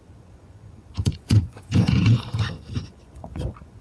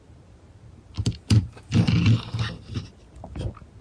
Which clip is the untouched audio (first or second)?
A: second